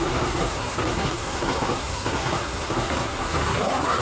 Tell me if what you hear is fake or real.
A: fake